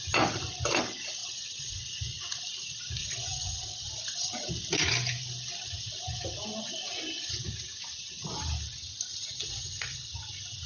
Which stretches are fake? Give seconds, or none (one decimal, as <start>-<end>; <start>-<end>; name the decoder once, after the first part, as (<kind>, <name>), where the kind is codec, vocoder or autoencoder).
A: 1.2-1.8 (vocoder, Vocos); 3.0-4.5; 9.1-10.1